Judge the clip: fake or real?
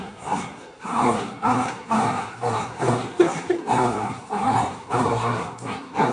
fake